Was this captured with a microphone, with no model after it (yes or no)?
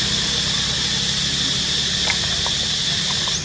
yes